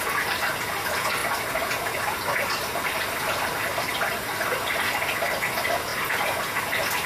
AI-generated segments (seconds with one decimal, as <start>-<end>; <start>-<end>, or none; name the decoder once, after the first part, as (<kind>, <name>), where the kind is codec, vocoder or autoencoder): none